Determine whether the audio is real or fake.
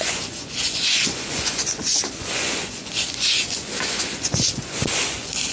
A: fake